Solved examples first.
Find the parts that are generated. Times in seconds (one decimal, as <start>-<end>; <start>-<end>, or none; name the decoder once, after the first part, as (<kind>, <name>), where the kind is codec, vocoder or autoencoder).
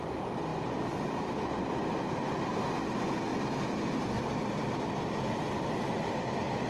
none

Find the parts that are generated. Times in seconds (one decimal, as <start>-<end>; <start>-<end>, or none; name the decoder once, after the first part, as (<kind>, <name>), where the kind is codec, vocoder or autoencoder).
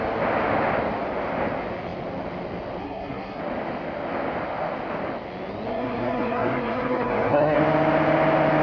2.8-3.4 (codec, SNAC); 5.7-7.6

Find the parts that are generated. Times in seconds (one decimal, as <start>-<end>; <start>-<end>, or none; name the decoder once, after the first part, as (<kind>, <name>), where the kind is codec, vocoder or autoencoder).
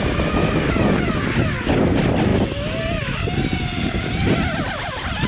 none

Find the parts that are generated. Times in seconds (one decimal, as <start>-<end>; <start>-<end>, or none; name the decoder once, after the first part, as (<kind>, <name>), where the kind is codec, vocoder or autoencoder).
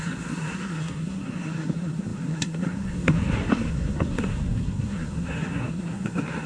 0.0-6.5 (codec, SNAC)